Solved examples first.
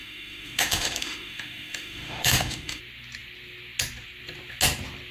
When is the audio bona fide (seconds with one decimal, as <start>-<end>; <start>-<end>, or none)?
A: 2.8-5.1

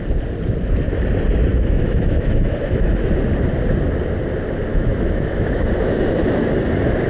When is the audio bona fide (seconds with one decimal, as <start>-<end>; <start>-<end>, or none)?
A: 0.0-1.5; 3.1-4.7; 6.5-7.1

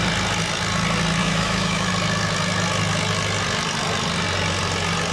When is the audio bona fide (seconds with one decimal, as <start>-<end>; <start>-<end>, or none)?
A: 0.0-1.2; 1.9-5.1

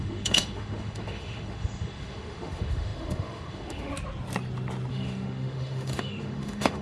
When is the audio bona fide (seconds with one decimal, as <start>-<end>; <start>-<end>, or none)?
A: 3.9-4.9

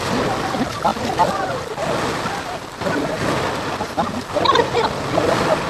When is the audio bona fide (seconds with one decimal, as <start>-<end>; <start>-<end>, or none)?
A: 0.0-5.7

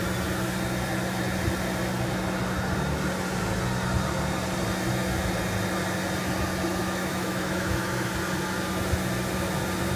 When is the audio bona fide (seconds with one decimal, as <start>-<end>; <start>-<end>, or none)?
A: 0.0-6.8; 8.1-10.0